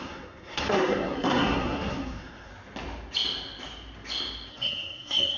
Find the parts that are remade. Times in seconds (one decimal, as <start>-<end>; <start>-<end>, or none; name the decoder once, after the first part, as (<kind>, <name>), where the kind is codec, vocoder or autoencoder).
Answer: 0.0-2.5 (codec, SNAC); 4.5-5.4